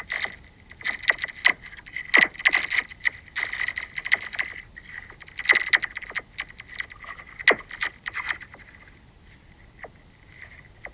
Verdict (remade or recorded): recorded